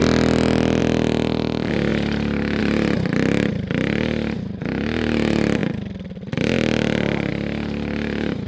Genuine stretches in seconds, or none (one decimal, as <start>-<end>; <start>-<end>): 0.0-8.5